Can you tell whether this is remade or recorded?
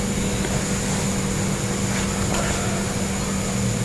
recorded